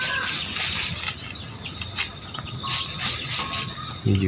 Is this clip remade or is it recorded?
recorded